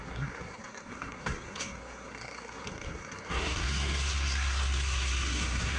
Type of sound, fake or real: fake